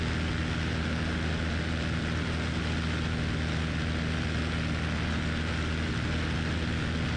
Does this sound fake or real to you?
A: real